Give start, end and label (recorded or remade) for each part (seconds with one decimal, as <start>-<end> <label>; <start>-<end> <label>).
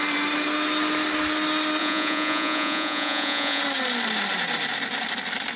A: 0.0-1.8 recorded; 1.8-3.6 remade; 3.6-5.6 recorded